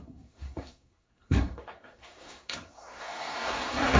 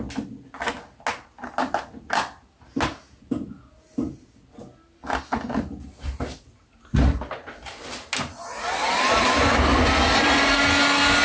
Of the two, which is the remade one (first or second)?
first